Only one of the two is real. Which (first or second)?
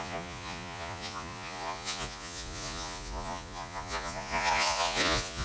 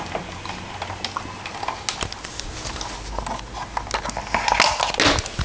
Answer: second